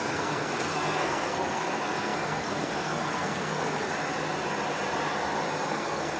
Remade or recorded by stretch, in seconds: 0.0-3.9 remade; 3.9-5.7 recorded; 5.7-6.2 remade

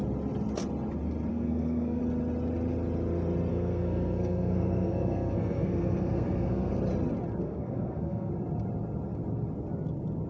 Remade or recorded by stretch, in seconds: 0.0-1.3 recorded; 1.3-2.0 remade; 2.0-3.5 recorded; 3.5-6.7 remade; 6.7-7.4 recorded; 7.4-8.3 remade; 8.3-10.3 recorded

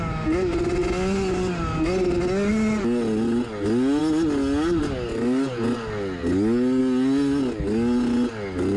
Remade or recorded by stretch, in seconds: 0.0-8.8 recorded

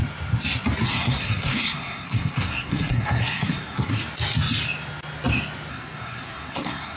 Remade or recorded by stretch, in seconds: 0.0-0.9 recorded; 0.9-4.0 remade; 4.0-5.7 recorded; 5.7-7.0 remade

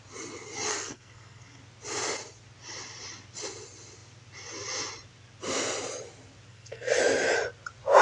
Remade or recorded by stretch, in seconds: 0.0-0.7 recorded; 0.7-1.6 remade; 1.6-6.5 recorded; 6.5-7.0 remade; 7.0-8.0 recorded

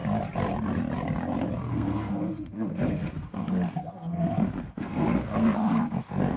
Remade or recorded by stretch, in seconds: 0.0-1.7 recorded; 1.7-6.4 remade